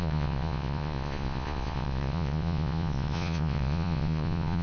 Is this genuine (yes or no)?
no